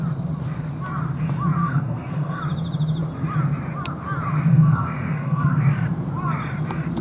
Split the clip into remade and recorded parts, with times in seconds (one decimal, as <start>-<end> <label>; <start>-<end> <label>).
0.0-1.6 recorded; 1.6-2.4 remade; 2.4-4.5 recorded; 4.5-5.6 remade; 5.6-7.0 recorded